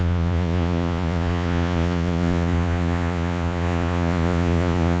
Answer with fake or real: fake